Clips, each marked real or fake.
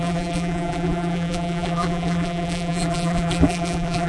fake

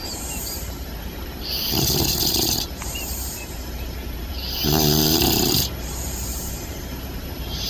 fake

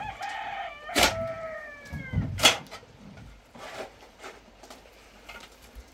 fake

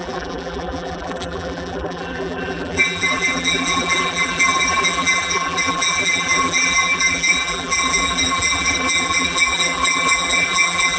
fake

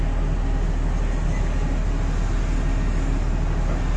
real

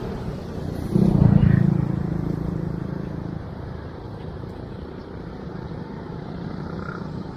fake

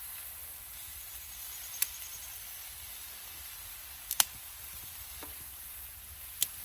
fake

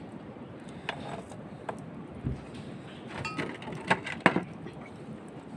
real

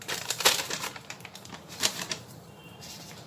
fake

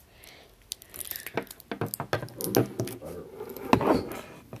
real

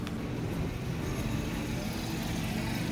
real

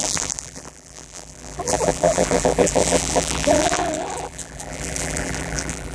fake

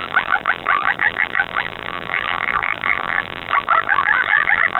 fake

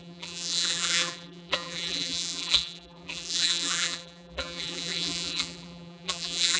fake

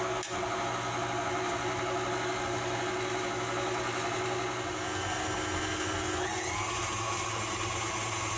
real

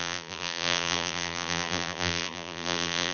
fake